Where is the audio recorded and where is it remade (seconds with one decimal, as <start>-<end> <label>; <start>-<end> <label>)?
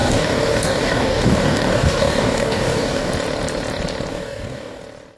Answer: 0.0-3.1 remade; 3.1-4.1 recorded; 4.1-4.8 remade; 4.8-5.2 recorded